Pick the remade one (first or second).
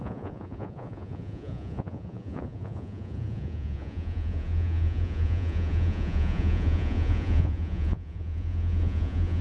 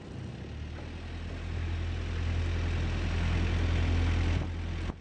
first